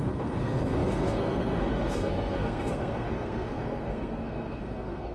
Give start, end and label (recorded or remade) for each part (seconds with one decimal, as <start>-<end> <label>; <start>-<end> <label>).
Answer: 0.0-5.1 remade